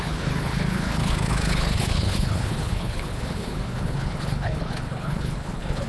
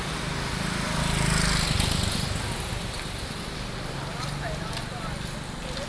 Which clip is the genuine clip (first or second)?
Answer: second